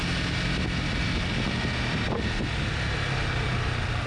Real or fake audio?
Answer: real